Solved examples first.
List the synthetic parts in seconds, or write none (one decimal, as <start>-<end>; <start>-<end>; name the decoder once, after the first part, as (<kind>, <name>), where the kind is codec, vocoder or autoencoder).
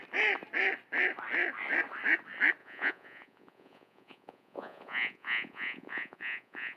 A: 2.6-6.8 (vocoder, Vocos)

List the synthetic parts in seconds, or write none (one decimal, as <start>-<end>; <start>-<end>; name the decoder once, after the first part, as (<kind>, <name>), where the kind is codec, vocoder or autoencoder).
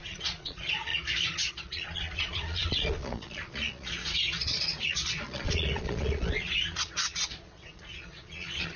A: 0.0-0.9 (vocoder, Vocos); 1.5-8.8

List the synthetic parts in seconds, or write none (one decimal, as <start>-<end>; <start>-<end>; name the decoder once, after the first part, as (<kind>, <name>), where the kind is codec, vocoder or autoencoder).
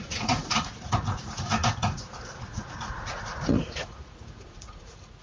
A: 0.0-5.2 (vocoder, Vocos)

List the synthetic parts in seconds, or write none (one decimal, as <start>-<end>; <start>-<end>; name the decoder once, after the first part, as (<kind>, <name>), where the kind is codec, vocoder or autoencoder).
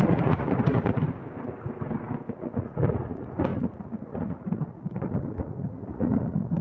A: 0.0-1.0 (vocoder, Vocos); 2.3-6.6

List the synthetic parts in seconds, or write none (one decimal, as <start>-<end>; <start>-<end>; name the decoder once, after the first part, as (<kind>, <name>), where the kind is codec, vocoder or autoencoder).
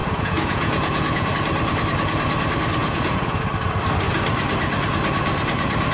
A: 0.0-1.3 (vocoder, Vocos); 2.8-3.4